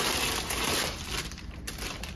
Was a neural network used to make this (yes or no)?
yes